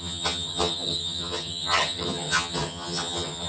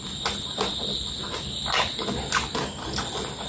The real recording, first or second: second